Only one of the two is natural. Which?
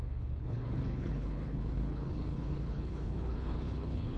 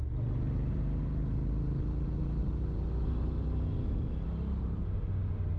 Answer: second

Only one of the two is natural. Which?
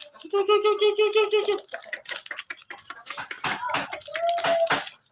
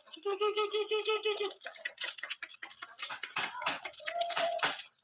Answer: first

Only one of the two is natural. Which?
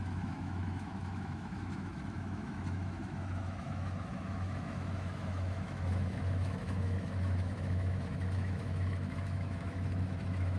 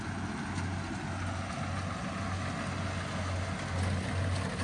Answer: second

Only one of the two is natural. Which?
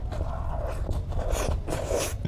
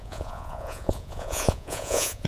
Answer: first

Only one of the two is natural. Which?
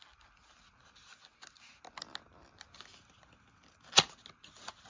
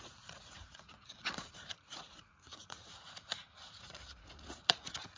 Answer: first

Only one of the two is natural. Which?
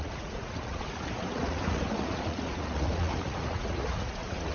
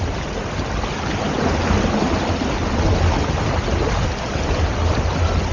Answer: second